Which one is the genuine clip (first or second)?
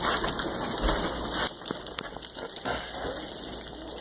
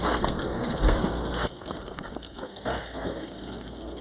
first